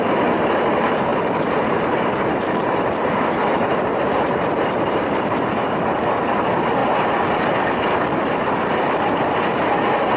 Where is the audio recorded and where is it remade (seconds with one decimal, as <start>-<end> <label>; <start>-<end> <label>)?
0.0-1.1 recorded; 1.1-5.8 remade; 5.8-10.2 recorded